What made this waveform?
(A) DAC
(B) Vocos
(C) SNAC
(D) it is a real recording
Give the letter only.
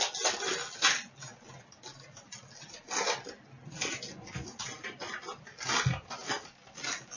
D